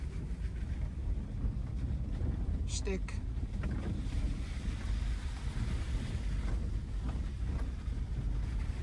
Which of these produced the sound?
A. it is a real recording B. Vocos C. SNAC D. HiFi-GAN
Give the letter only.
A